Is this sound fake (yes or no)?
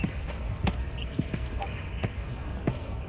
yes